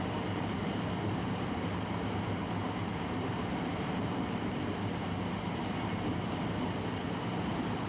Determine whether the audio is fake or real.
fake